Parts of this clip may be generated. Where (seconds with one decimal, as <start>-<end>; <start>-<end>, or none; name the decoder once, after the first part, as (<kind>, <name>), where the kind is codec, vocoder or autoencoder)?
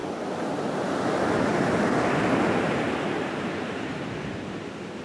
none